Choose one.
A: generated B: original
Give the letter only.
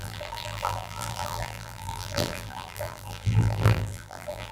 A